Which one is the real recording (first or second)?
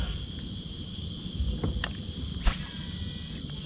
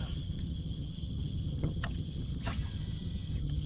first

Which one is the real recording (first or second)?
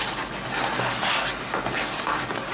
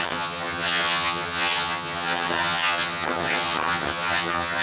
first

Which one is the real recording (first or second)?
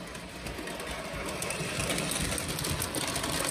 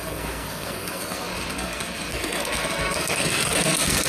first